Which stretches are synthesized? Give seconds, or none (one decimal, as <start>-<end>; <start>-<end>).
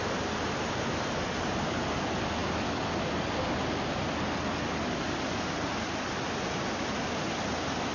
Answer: 0.0-1.1